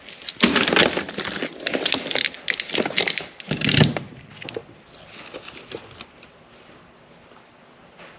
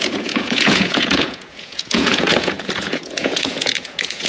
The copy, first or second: second